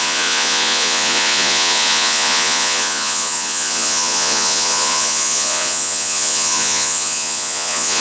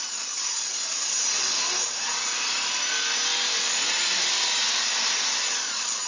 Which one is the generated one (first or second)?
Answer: first